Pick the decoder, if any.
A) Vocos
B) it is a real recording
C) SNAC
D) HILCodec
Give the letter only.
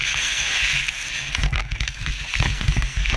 C